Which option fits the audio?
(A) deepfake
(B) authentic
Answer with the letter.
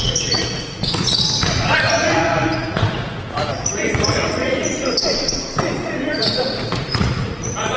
A